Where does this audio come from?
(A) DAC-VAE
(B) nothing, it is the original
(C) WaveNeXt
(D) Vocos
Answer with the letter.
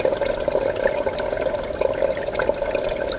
B